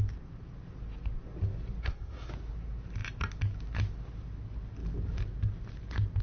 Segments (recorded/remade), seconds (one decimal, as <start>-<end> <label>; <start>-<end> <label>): 0.0-1.8 recorded; 1.8-2.3 remade; 2.3-6.2 recorded